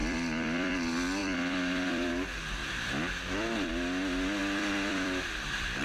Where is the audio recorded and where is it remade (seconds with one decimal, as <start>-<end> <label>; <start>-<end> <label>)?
0.0-0.7 remade; 0.7-1.2 recorded; 1.2-2.1 remade; 2.1-2.6 recorded; 2.6-3.7 remade; 3.7-4.4 recorded; 4.4-5.8 remade